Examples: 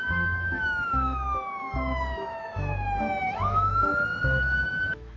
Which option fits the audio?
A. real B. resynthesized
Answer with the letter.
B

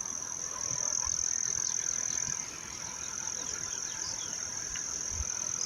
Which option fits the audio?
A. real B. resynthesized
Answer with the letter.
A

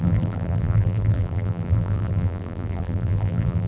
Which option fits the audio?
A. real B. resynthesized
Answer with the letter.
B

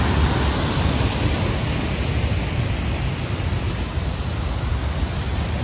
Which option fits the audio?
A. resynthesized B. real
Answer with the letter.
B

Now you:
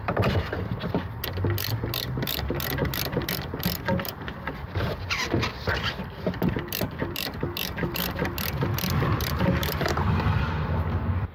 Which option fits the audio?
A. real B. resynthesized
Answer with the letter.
B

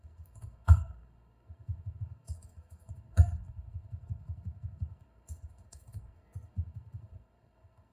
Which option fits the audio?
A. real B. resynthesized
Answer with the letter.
B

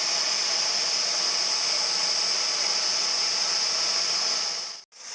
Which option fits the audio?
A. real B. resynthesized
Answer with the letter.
A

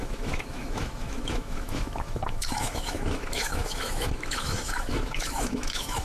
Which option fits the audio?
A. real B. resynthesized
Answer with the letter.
B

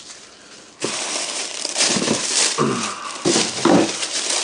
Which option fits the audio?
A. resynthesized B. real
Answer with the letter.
A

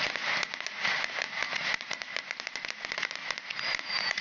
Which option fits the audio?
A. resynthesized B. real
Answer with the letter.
B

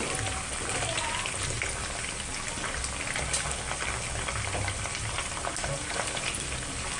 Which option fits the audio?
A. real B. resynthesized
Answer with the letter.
A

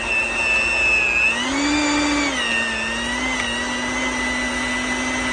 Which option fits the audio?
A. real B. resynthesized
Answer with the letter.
A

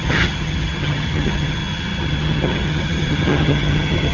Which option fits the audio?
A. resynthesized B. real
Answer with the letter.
A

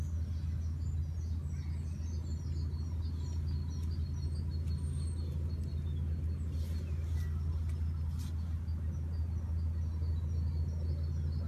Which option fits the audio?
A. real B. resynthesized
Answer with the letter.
A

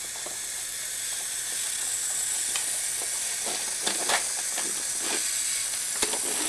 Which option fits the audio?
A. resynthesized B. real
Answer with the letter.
B